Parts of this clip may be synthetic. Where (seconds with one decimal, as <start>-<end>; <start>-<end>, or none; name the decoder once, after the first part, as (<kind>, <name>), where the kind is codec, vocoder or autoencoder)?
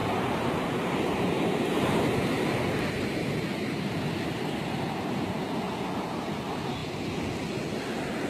none